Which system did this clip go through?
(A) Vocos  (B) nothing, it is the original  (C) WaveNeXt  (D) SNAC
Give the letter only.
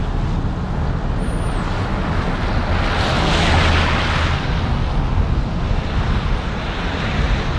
B